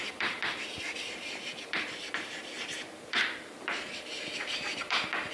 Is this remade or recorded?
remade